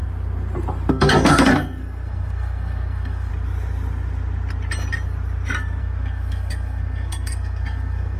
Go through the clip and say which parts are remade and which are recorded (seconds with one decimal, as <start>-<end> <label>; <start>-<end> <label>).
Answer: 0.0-0.9 recorded; 0.9-3.3 remade; 3.3-5.8 recorded; 5.8-8.2 remade